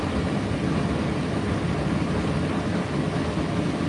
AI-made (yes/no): no